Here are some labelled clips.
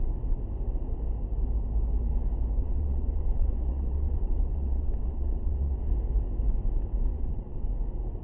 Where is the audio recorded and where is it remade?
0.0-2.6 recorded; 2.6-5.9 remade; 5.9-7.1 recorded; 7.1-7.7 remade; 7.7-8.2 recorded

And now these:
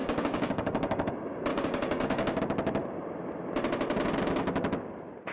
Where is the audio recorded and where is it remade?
0.0-1.1 remade; 1.1-1.5 recorded; 1.5-2.4 remade; 2.4-5.3 recorded